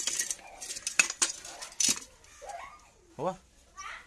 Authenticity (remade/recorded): recorded